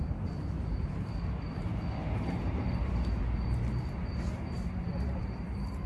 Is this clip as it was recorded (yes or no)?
no